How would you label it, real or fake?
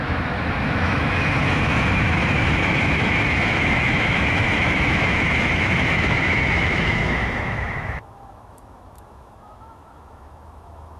fake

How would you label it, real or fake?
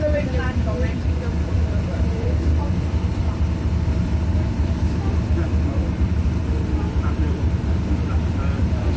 fake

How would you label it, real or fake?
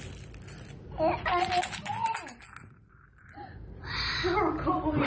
real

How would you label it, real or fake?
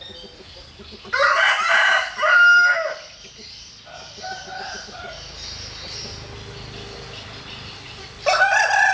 real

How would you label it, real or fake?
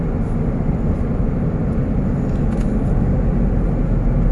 real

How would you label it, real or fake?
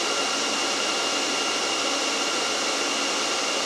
real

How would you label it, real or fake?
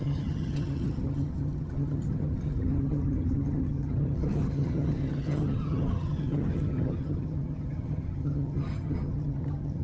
fake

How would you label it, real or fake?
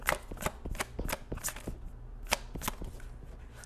real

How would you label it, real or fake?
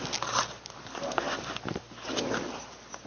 real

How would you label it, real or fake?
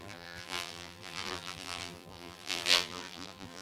fake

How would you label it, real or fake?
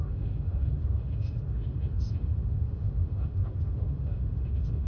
fake